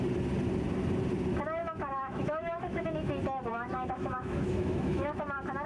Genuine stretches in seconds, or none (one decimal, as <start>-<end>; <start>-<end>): 0.0-1.6; 3.1-3.5; 5.2-5.7